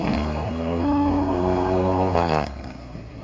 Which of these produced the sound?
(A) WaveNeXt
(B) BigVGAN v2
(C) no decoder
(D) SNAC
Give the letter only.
D